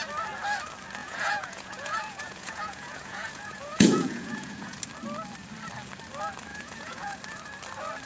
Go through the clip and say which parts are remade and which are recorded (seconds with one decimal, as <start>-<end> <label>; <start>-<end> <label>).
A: 0.0-1.0 recorded; 1.0-4.8 remade; 4.8-6.5 recorded; 6.5-7.2 remade; 7.2-8.1 recorded